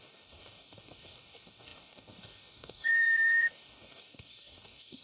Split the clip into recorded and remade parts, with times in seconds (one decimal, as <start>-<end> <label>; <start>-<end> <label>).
0.0-5.0 remade

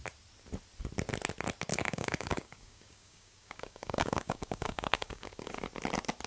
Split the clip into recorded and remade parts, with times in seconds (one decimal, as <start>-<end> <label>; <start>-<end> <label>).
0.0-1.7 recorded; 1.7-5.5 remade; 5.5-6.3 recorded

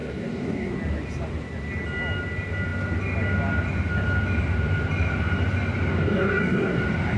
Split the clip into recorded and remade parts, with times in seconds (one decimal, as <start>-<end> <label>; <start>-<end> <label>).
0.0-0.7 remade; 0.7-5.9 recorded; 5.9-6.8 remade; 6.8-7.2 recorded

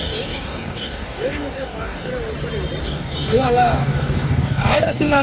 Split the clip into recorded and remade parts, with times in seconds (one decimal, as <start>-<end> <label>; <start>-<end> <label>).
0.0-2.1 remade; 2.1-2.8 recorded; 2.8-5.2 remade

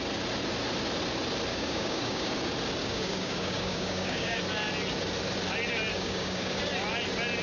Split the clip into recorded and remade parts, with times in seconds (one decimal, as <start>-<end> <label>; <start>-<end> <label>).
0.0-1.5 recorded; 1.5-2.3 remade; 2.3-2.8 recorded; 2.8-4.4 remade; 4.4-5.9 recorded; 5.9-6.6 remade; 6.6-7.4 recorded

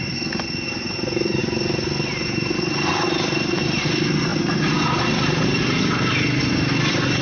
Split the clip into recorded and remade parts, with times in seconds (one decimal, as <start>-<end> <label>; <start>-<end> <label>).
0.0-7.2 recorded

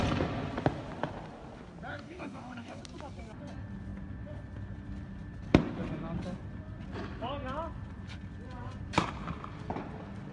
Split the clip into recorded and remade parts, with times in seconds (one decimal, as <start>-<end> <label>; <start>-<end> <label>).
0.0-1.9 recorded; 1.9-2.8 remade; 2.8-10.3 recorded

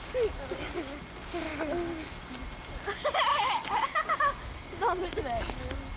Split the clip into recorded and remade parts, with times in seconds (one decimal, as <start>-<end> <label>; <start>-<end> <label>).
0.0-3.3 recorded; 3.3-5.2 remade; 5.2-6.0 recorded